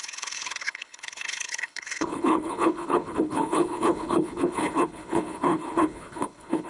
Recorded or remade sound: remade